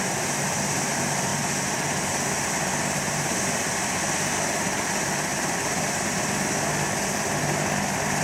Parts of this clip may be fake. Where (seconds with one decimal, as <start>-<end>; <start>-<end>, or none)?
none